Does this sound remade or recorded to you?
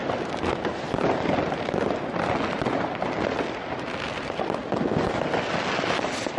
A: recorded